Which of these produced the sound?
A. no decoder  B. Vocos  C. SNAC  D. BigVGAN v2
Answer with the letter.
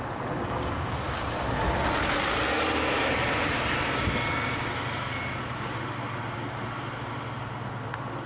A